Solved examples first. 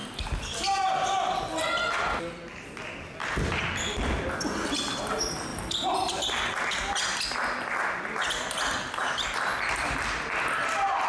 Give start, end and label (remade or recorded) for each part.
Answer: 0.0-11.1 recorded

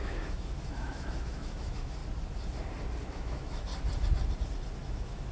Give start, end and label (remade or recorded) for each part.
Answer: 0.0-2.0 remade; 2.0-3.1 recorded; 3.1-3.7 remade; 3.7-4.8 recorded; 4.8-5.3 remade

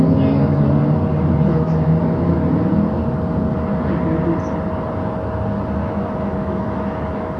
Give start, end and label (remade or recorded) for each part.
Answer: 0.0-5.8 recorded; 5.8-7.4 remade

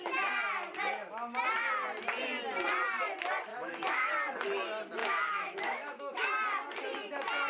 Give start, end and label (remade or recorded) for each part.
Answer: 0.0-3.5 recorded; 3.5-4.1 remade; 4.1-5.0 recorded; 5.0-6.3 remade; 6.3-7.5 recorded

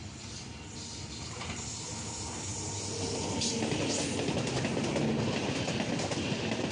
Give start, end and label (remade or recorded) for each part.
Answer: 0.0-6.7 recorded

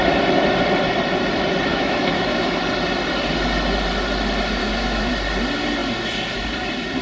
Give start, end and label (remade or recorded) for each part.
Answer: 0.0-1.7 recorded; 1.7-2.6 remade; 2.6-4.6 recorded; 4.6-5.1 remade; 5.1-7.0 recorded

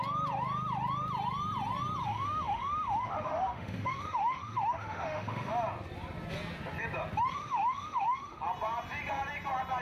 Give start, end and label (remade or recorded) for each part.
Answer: 0.0-2.0 recorded; 2.0-5.5 remade; 5.5-7.3 recorded; 7.3-8.4 remade; 8.4-9.8 recorded

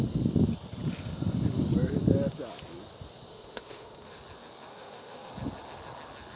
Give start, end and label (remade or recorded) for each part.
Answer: 0.0-3.3 recorded; 3.3-4.2 remade; 4.2-4.7 recorded; 4.7-5.3 remade; 5.3-6.4 recorded